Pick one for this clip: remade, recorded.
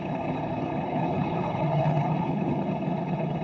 remade